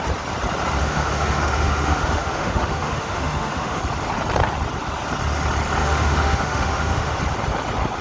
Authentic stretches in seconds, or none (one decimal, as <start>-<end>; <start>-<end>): 0.0-0.8; 3.8-5.8; 7.2-8.0